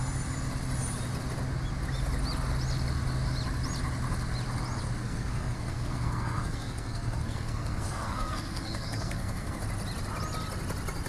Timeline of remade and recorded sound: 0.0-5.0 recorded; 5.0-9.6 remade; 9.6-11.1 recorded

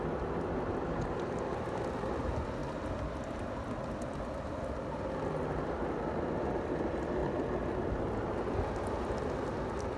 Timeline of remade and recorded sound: 0.0-10.0 recorded

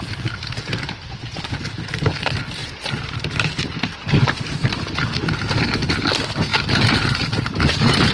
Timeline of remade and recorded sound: 0.0-2.6 recorded; 2.6-5.3 remade; 5.3-6.5 recorded; 6.5-8.1 remade